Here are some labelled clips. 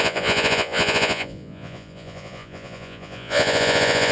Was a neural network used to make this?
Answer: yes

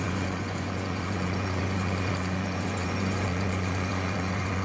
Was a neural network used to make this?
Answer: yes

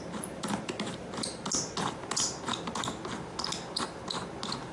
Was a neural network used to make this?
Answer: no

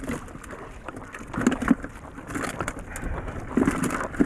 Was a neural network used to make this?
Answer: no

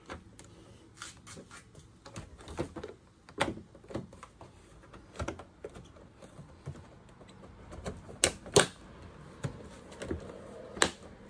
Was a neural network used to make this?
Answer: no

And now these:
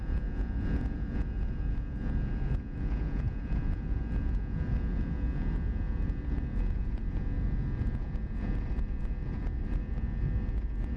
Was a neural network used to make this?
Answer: yes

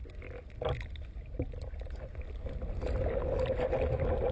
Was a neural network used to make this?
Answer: no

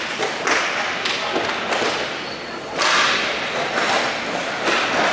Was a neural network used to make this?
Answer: no